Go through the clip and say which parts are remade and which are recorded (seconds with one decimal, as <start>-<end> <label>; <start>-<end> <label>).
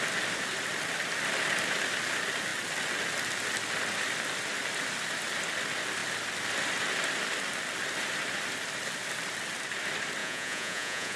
0.0-10.2 recorded; 10.2-11.2 remade